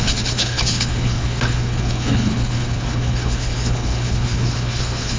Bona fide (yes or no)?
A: no